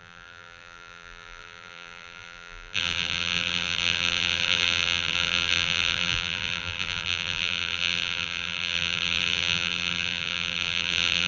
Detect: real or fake fake